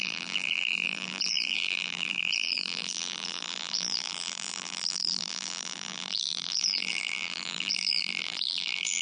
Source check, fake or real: fake